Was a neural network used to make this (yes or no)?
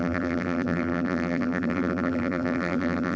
yes